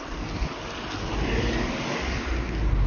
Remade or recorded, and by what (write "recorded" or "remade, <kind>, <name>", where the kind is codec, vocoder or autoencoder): recorded